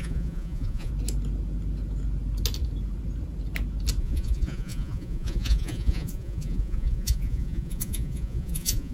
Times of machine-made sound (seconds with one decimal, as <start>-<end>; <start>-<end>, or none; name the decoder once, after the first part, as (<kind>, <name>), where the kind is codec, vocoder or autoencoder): 0.0-0.9 (vocoder, Vocos); 4.0-8.9